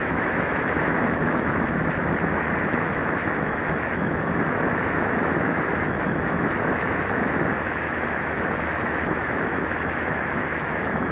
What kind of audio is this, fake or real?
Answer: fake